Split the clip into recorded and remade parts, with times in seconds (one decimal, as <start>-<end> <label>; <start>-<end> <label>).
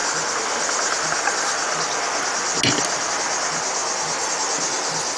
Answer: 0.0-5.2 recorded